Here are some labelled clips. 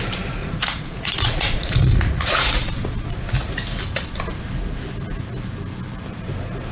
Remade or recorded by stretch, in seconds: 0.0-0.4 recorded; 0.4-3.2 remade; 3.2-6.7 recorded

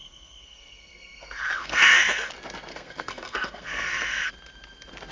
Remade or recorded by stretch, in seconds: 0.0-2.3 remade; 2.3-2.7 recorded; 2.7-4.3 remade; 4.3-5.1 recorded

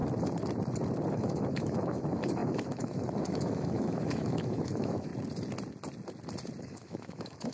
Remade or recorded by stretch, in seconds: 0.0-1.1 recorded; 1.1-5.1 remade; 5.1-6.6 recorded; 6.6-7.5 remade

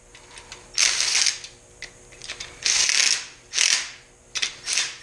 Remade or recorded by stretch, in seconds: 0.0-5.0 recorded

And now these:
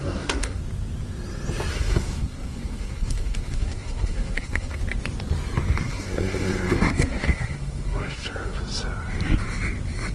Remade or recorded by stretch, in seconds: 0.0-0.6 remade; 0.6-1.7 recorded; 1.7-4.8 remade; 4.8-5.8 recorded; 5.8-8.6 remade; 8.6-10.1 recorded

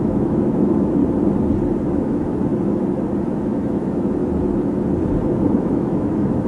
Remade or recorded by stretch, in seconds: 0.0-1.0 remade; 1.0-2.0 recorded; 2.0-2.5 remade; 2.5-3.3 recorded; 3.3-4.2 remade; 4.2-5.5 recorded; 5.5-6.5 remade